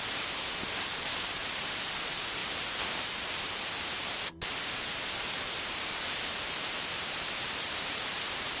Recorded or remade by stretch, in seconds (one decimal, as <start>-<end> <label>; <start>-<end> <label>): 0.0-1.4 remade; 1.4-2.0 recorded; 2.0-8.6 remade